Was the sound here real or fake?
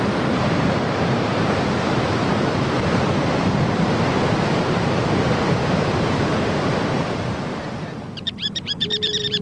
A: fake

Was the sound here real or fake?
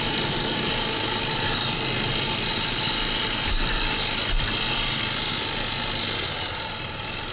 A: real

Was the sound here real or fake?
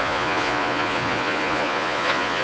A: fake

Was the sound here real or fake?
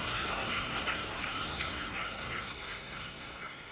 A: fake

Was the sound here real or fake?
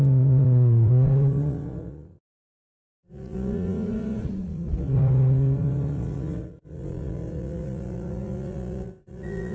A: fake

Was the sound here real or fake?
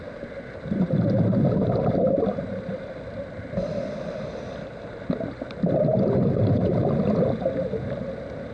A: real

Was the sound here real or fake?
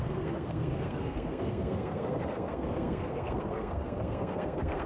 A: fake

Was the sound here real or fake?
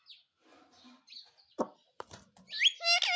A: real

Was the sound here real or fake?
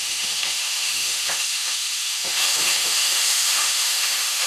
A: fake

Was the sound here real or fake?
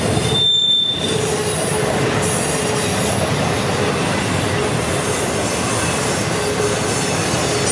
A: real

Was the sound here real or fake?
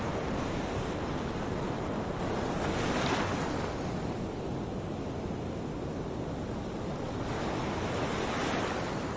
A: real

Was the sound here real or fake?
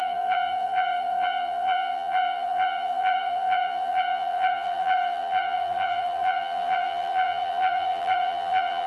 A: fake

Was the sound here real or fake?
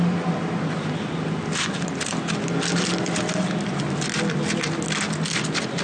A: real